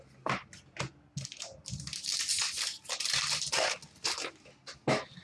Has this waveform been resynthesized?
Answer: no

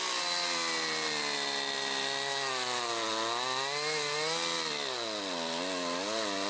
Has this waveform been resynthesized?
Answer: no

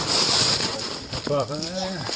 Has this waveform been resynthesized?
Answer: yes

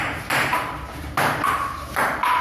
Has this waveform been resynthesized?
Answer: yes